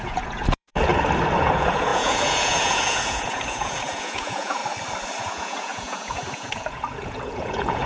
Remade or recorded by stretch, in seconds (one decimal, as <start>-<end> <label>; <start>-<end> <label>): 0.0-0.9 remade; 0.9-1.4 recorded; 1.4-4.6 remade; 4.6-5.2 recorded; 5.2-7.9 remade